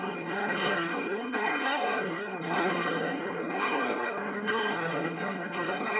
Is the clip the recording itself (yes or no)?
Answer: no